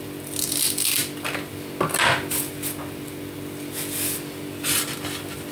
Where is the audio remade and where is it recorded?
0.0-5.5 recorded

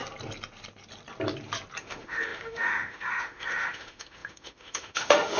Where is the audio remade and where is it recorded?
0.0-1.8 recorded; 1.8-5.4 remade

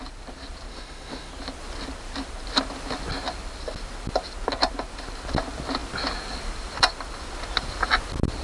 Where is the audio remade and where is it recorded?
0.0-0.7 recorded; 0.7-1.3 remade; 1.3-8.4 recorded

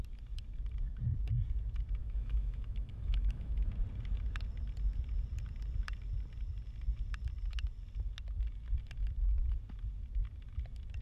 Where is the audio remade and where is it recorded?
0.0-2.0 recorded; 2.0-3.7 remade; 3.7-11.0 recorded

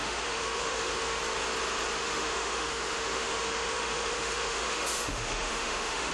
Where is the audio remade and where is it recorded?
0.0-1.2 remade; 1.2-2.0 recorded; 2.0-6.1 remade